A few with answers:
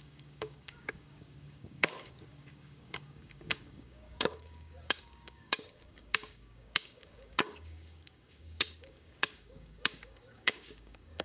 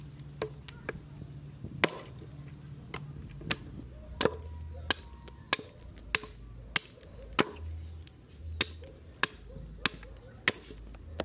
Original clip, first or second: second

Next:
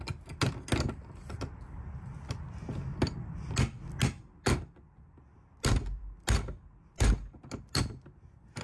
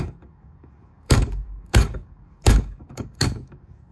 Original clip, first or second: first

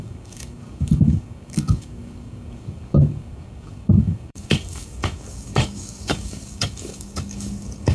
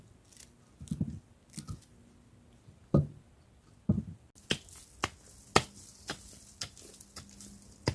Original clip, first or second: second